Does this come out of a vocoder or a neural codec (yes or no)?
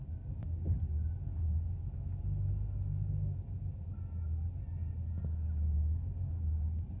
no